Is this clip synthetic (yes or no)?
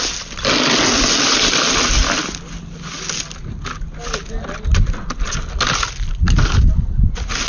no